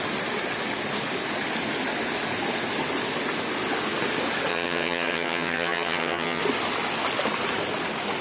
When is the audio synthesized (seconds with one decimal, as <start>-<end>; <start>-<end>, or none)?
4.5-6.4